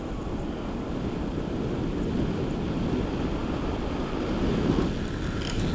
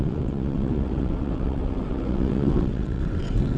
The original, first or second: first